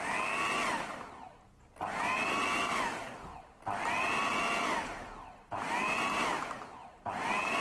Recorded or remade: recorded